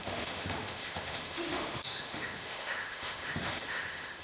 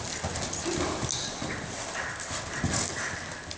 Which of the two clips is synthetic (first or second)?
first